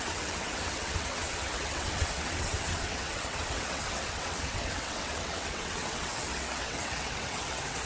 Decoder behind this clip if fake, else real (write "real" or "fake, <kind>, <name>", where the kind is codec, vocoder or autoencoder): fake, vocoder, WaveNeXt